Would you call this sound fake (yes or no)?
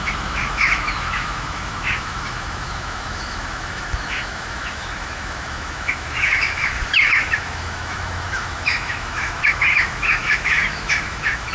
yes